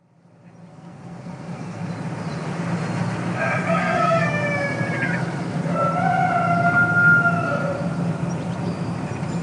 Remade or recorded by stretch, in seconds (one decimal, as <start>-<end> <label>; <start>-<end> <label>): 0.0-0.7 recorded; 0.7-1.9 remade; 1.9-3.8 recorded; 3.8-4.4 remade; 4.4-9.4 recorded